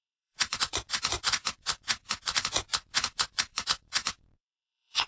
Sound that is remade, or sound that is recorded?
remade